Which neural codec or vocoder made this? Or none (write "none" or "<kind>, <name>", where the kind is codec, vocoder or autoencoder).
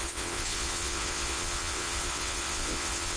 vocoder, WaveNeXt